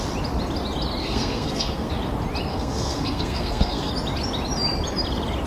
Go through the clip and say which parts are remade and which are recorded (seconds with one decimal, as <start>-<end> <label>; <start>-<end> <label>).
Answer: 0.0-1.0 recorded; 1.0-1.9 remade; 1.9-2.5 recorded; 2.5-3.9 remade; 3.9-5.5 recorded